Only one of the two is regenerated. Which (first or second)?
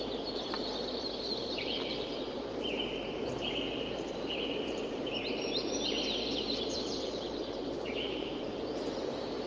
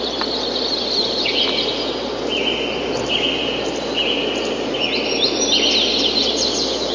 first